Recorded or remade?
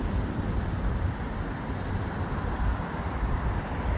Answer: recorded